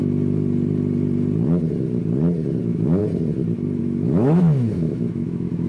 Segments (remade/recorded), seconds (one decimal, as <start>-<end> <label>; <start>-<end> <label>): 0.0-2.6 recorded; 2.6-3.0 remade; 3.0-3.8 recorded; 3.8-5.7 remade